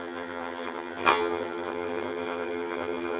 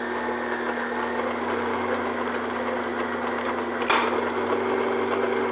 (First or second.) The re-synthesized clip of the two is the first